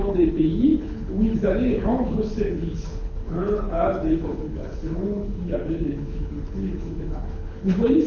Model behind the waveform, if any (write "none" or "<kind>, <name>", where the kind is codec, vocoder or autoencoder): codec, HILCodec